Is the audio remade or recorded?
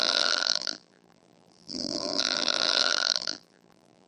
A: remade